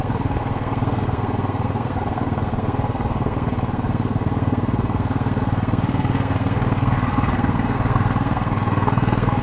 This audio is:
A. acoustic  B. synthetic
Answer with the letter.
B